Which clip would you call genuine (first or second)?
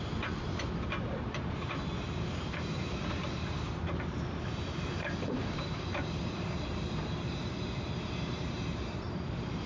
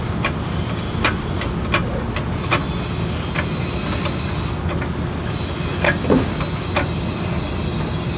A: second